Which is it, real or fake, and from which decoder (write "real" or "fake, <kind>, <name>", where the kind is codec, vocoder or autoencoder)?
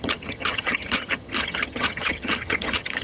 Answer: fake, vocoder, HiFi-GAN